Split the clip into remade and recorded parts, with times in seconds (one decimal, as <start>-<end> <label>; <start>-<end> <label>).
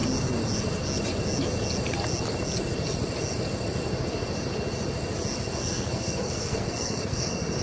0.0-5.6 recorded; 5.6-7.6 remade